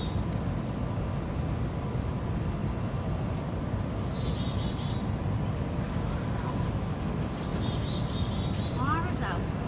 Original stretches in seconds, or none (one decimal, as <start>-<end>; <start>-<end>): 0.0-2.6; 4.7-7.5; 8.3-9.7